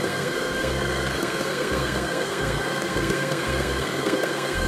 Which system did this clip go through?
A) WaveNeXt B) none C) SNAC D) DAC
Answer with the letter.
C